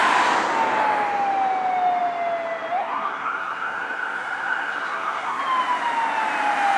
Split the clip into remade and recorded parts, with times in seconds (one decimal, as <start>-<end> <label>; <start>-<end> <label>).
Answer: 0.0-2.8 recorded; 2.8-5.4 remade; 5.4-6.8 recorded